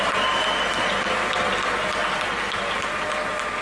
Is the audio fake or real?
real